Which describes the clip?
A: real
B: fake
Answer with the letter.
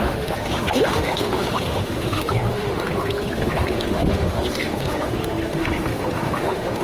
B